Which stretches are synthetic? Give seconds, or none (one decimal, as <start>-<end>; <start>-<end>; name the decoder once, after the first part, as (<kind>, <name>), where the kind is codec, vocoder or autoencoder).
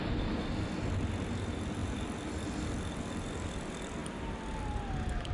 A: 1.8-2.8 (vocoder, BigVGAN v2)